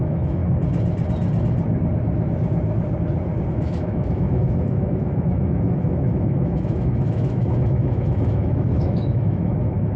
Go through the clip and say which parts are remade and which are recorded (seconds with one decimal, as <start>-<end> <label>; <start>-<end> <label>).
0.0-0.4 remade; 0.4-3.5 recorded; 3.5-10.0 remade